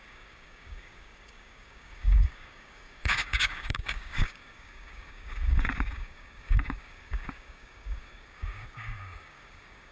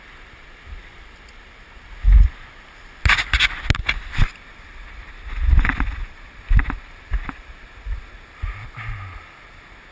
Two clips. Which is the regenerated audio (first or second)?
first